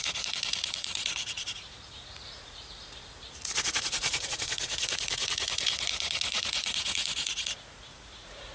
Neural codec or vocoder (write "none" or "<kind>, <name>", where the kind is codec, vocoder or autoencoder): vocoder, Vocos